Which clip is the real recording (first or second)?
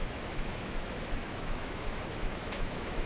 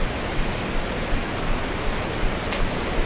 second